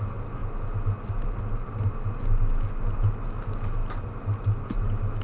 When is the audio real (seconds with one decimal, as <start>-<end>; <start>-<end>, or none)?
0.0-5.2